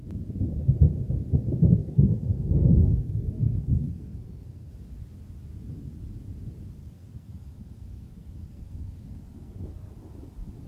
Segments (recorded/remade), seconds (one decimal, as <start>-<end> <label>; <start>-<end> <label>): 0.0-1.8 recorded; 1.8-4.7 remade; 4.7-6.8 recorded; 6.8-9.9 remade; 9.9-10.7 recorded